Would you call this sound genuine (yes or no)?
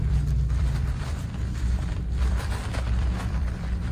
no